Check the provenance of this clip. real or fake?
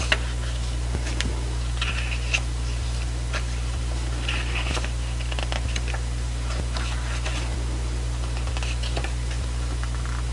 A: real